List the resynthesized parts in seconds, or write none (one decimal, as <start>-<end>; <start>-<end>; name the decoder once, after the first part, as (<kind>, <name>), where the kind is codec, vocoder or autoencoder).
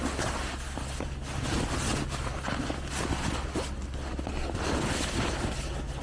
none